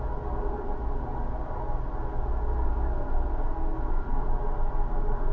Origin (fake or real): real